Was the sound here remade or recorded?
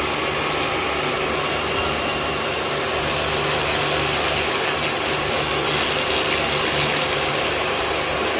recorded